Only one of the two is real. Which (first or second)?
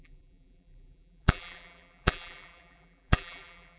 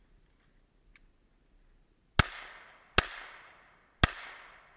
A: second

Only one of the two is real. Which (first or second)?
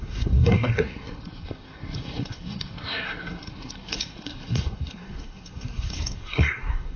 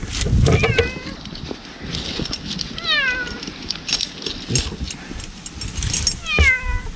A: second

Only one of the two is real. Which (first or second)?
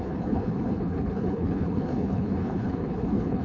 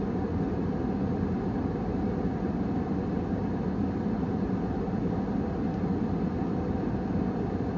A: second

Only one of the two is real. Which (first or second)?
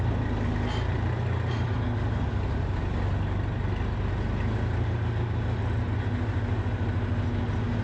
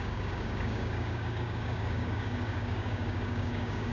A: first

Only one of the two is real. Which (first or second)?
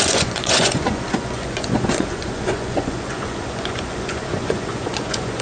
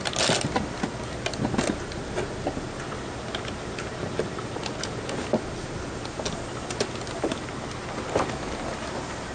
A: second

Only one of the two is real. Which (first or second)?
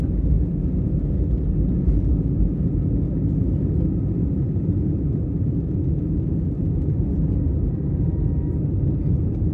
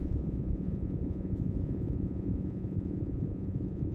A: first